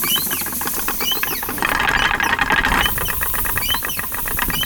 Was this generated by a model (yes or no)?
no